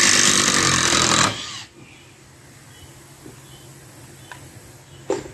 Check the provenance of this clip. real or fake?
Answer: real